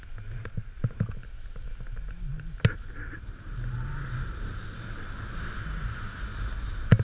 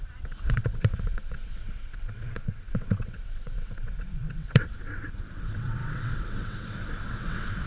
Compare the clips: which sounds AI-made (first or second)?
second